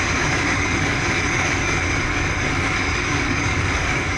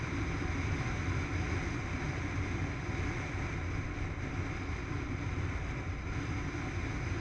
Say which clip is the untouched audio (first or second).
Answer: second